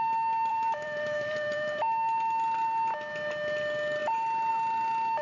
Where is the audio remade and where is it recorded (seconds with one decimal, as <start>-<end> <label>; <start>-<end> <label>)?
0.0-0.5 recorded; 0.5-1.8 remade; 1.8-5.2 recorded